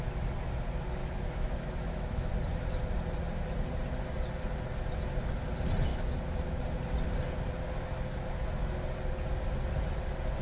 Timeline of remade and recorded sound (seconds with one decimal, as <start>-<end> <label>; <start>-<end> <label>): 0.0-1.0 recorded; 1.0-2.3 remade; 2.3-5.9 recorded; 5.9-6.6 remade; 6.6-10.4 recorded